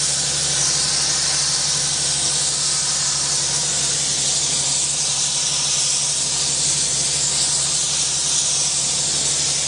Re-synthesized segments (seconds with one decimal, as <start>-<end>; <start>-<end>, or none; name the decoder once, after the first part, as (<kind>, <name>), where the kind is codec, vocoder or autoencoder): none